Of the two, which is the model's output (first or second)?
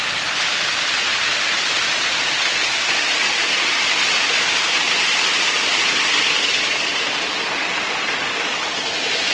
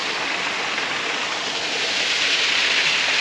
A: first